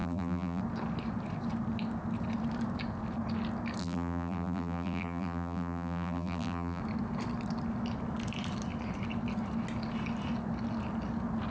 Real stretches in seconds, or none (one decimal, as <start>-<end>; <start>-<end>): 0.6-3.8; 6.8-11.5